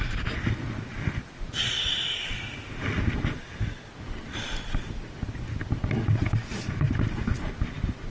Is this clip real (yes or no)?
yes